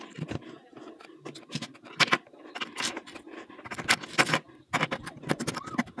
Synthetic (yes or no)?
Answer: no